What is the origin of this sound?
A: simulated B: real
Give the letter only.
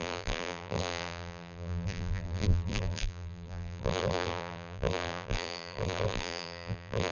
A